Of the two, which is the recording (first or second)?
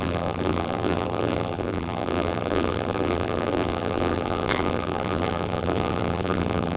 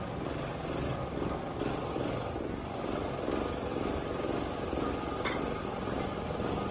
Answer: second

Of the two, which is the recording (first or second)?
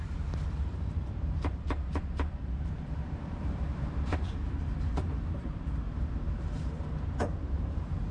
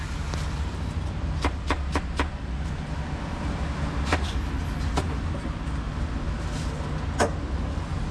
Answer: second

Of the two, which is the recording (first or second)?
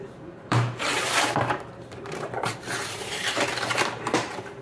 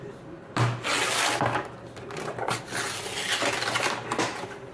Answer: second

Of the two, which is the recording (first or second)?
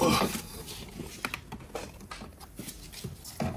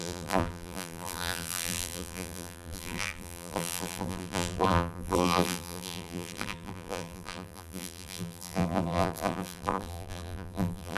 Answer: first